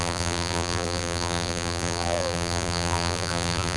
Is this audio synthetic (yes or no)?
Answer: yes